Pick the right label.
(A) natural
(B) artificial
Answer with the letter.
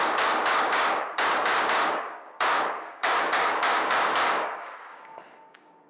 B